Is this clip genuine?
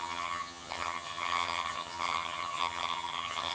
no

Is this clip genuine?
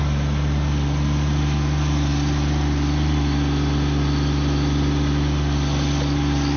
yes